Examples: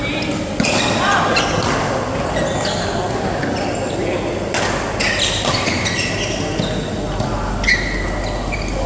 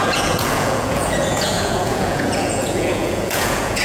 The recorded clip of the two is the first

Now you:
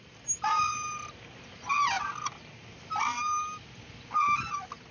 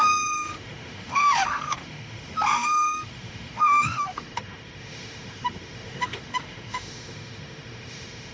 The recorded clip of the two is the first